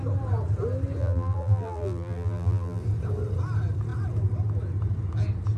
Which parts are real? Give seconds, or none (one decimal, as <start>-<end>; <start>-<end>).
0.0-1.0; 2.8-5.6